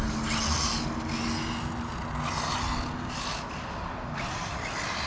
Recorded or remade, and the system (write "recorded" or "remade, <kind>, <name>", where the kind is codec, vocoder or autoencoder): recorded